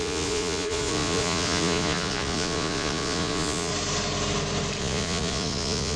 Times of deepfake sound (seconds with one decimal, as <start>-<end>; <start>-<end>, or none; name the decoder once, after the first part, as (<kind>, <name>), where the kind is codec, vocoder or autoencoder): 0.0-3.7 (vocoder, Vocos); 4.8-6.0